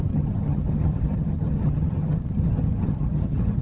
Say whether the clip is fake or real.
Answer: fake